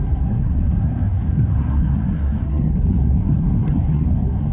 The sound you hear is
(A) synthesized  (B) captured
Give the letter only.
A